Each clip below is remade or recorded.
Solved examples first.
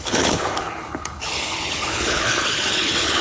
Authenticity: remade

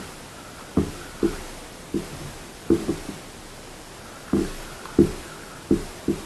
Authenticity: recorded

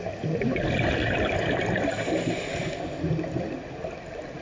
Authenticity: recorded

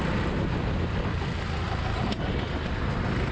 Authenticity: recorded